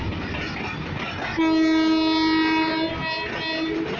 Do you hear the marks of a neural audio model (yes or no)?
no